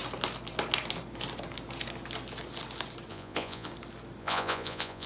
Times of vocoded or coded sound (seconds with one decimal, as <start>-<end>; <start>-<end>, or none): 3.1-3.7; 4.2-5.1